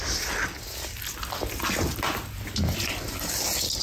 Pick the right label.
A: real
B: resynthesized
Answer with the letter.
A